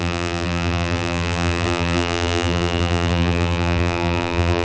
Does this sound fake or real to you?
fake